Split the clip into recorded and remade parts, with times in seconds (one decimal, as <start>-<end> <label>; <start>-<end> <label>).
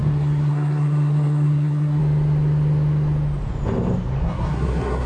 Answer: 0.0-2.0 remade; 2.0-4.2 recorded; 4.2-5.1 remade